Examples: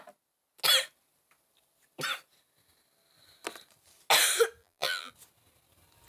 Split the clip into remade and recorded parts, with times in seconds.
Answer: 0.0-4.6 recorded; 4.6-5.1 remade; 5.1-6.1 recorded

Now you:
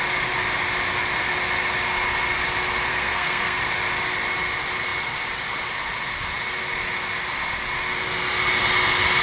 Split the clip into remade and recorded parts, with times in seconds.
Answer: 0.0-2.9 recorded; 2.9-3.6 remade; 3.6-9.2 recorded

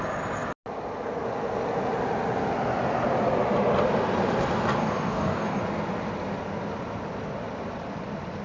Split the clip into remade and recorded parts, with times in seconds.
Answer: 0.0-4.8 recorded; 4.8-5.6 remade; 5.6-8.4 recorded

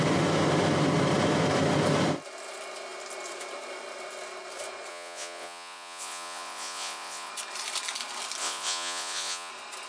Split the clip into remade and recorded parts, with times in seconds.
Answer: 0.0-4.9 recorded; 4.9-7.3 remade; 7.3-8.4 recorded; 8.4-9.5 remade; 9.5-9.9 recorded

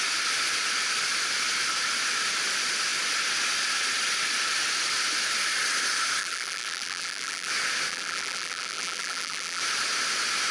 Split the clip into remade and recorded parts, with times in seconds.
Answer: 0.0-6.2 recorded; 6.2-7.5 remade; 7.5-7.9 recorded; 7.9-9.6 remade; 9.6-10.5 recorded

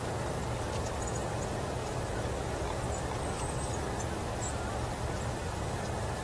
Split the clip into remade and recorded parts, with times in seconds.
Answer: 0.0-1.8 recorded; 1.8-3.8 remade; 3.8-5.4 recorded; 5.4-6.2 remade

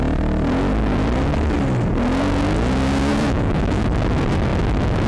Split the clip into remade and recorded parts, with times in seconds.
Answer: 0.0-3.1 recorded; 3.1-3.8 remade; 3.8-5.1 recorded